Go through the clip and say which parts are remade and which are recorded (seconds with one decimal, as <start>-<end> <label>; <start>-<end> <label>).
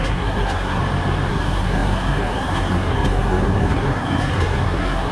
0.0-0.8 remade; 0.8-1.3 recorded; 1.3-5.1 remade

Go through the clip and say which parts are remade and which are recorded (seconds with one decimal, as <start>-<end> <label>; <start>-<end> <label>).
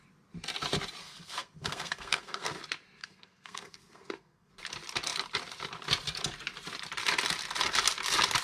0.0-1.0 recorded; 1.0-2.6 remade; 2.6-3.0 recorded; 3.0-4.5 remade; 4.5-8.4 recorded